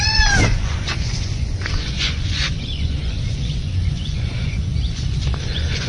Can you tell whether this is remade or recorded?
remade